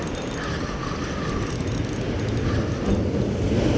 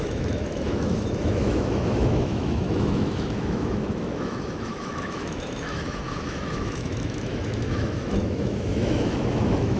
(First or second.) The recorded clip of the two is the first